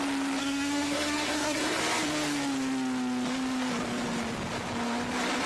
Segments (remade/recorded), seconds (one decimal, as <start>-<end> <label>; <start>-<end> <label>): 0.0-0.4 recorded; 0.4-1.8 remade; 1.8-5.5 recorded